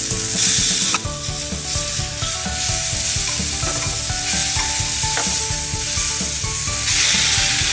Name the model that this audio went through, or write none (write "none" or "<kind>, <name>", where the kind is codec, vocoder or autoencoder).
none